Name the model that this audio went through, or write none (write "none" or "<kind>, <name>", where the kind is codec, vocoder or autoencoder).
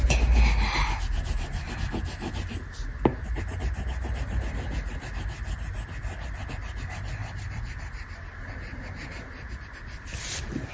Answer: none